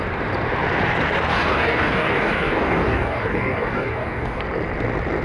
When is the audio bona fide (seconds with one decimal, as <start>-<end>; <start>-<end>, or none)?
0.0-1.3; 4.4-5.2